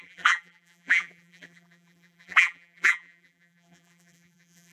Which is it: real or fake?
fake